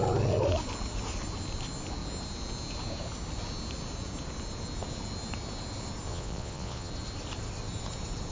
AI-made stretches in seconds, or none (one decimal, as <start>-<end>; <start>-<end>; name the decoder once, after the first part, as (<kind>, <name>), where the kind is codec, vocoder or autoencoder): 6.1-6.9 (vocoder, Vocos)

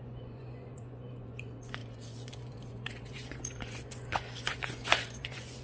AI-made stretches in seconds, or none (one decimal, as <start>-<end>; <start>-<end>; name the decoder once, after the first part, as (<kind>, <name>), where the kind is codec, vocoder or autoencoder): 0.0-5.6 (vocoder, Vocos)

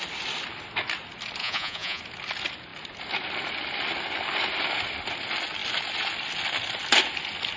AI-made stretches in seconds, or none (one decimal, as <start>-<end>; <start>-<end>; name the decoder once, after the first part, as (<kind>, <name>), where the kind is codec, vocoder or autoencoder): 1.4-2.0 (vocoder, Vocos)

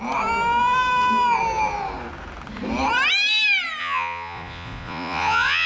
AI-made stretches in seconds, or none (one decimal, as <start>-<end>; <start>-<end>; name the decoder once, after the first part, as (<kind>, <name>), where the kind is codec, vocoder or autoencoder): 3.8-5.7 (vocoder, Vocos)

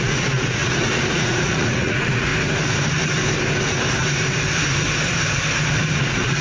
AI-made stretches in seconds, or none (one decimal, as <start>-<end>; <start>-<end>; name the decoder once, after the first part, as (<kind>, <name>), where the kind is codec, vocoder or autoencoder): 0.0-2.3 (vocoder, Vocos); 6.0-6.4